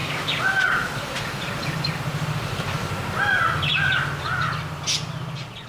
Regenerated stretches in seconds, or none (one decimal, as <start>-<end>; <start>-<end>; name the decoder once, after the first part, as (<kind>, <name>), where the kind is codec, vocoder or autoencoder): none